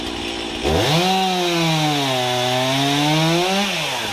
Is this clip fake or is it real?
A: real